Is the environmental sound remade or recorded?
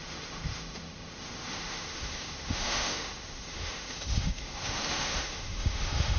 remade